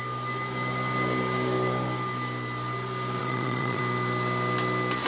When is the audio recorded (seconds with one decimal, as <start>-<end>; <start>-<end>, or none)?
0.0-3.2; 3.8-5.1